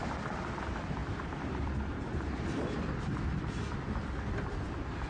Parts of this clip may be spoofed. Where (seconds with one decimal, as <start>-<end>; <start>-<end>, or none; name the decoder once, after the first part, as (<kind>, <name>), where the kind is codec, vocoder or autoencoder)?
1.0-1.9 (vocoder, BigVGAN v2)